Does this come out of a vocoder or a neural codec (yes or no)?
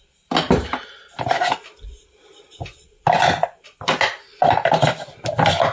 no